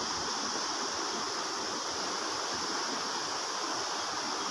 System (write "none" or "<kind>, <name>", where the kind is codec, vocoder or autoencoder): none